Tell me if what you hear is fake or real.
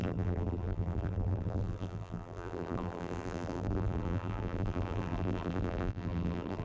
fake